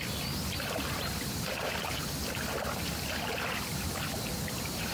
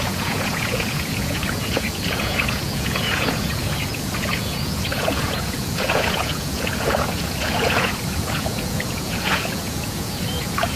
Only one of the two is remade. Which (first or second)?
second